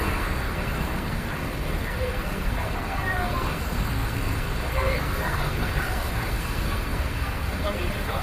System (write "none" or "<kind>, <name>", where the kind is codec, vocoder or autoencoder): codec, SNAC